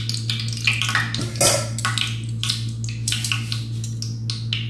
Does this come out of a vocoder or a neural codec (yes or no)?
no